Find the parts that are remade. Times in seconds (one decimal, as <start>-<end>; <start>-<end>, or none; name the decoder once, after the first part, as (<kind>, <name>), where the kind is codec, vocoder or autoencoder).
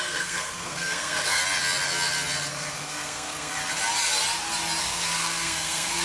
0.0-1.4 (codec, SNAC); 2.5-3.6; 4.8-6.0